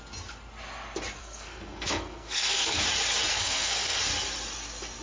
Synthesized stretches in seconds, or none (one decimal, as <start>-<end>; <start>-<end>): 1.2-2.8; 3.3-4.0